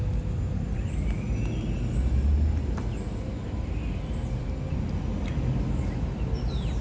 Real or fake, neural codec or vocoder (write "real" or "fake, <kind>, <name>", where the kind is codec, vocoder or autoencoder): real